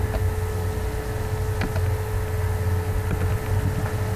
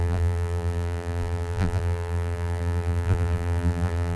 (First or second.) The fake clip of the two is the second